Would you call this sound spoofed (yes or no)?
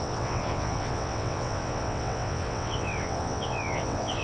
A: yes